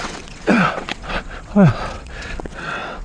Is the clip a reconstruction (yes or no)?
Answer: yes